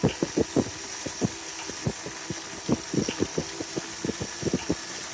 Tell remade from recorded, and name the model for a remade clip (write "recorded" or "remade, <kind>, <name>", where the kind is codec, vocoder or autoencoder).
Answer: recorded